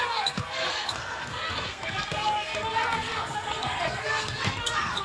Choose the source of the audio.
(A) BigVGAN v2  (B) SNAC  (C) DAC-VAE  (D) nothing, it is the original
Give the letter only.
B